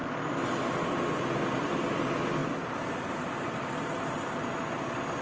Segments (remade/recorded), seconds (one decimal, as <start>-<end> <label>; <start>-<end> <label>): 0.0-2.4 recorded; 2.4-4.1 remade; 4.1-5.2 recorded